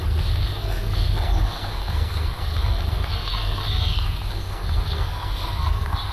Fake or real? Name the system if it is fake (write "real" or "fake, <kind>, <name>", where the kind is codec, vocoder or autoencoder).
fake, codec, SNAC